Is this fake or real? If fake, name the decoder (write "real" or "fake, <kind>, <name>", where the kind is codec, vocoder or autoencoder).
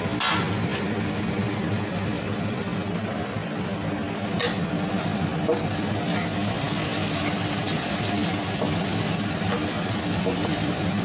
real